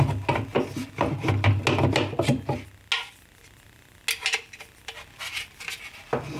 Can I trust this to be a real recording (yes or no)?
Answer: yes